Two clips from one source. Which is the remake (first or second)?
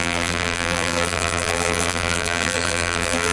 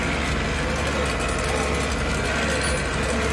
first